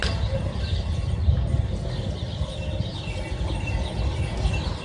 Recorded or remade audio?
recorded